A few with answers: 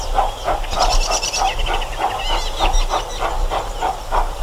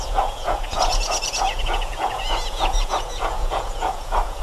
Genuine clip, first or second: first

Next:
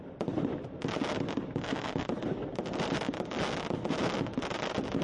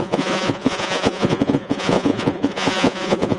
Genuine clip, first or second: first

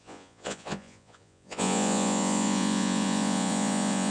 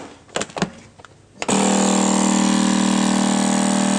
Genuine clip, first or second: second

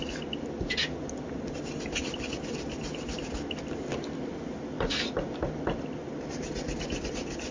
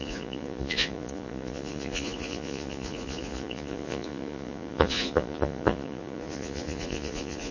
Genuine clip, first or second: first